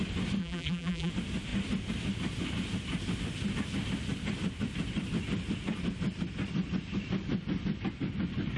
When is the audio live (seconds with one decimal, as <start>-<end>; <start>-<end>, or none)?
0.0-0.4; 1.1-8.6